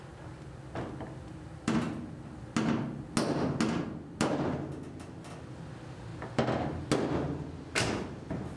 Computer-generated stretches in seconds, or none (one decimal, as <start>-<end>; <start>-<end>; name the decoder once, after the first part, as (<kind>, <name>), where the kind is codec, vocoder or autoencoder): none